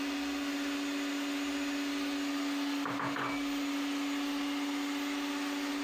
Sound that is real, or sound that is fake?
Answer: real